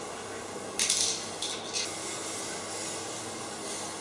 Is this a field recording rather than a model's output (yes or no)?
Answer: yes